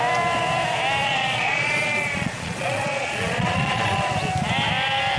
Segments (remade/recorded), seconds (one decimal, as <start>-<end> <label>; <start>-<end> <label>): 0.0-1.0 recorded; 1.0-4.1 remade; 4.1-5.2 recorded